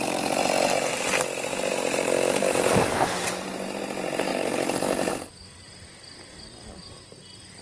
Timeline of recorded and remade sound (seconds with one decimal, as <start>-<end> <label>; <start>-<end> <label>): 0.0-2.9 recorded; 2.9-3.8 remade; 3.8-4.3 recorded; 4.3-5.1 remade; 5.1-7.6 recorded

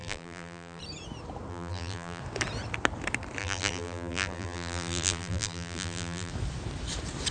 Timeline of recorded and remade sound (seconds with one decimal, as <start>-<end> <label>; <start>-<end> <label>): 0.0-0.8 remade; 0.8-1.5 recorded; 1.5-2.2 remade; 2.2-3.4 recorded; 3.4-6.3 remade; 6.3-7.3 recorded